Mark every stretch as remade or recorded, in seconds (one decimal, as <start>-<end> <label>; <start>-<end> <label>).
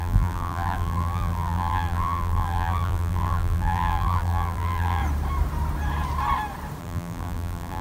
0.0-5.0 remade; 5.0-6.8 recorded; 6.8-7.8 remade